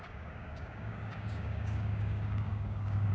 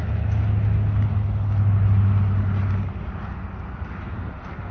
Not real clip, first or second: first